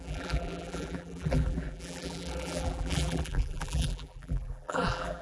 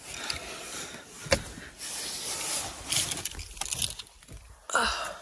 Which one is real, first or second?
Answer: second